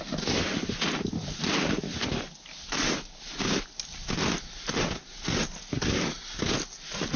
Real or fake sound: real